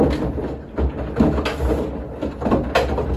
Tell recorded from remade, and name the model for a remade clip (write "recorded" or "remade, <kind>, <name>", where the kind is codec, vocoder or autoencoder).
recorded